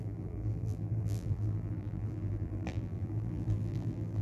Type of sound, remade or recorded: remade